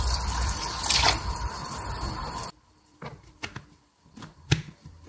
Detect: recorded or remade remade